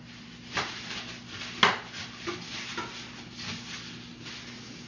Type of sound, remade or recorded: recorded